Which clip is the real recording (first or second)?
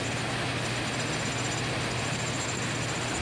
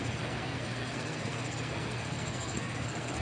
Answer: first